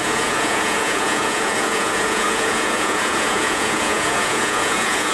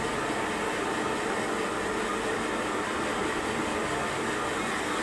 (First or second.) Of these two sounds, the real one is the second